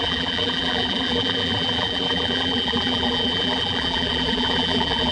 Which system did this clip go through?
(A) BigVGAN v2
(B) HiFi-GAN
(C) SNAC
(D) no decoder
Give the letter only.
A